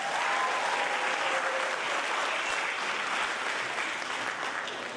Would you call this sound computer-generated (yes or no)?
no